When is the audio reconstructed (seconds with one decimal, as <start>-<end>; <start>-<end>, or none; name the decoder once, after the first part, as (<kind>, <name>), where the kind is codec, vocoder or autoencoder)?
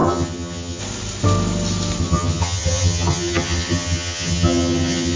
0.0-0.8 (vocoder, HiFi-GAN); 2.0-5.2